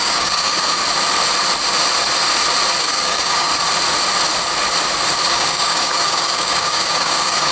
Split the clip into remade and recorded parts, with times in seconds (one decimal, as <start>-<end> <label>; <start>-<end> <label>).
0.0-0.8 remade; 0.8-2.8 recorded; 2.8-3.5 remade; 3.5-5.3 recorded; 5.3-7.5 remade